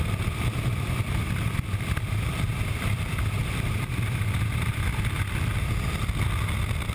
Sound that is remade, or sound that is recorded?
remade